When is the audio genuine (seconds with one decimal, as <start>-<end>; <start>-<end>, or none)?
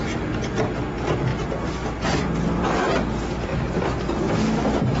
0.0-5.0